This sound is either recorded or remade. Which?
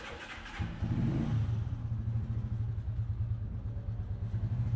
recorded